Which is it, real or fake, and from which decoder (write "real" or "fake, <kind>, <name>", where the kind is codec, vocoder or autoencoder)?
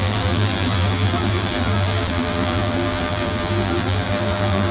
fake, vocoder, BigVGAN v2